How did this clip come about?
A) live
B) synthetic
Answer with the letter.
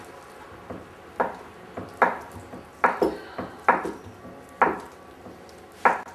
A